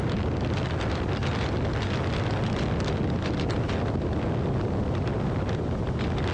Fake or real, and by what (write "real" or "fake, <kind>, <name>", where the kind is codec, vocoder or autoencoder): real